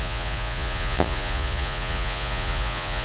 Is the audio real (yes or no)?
no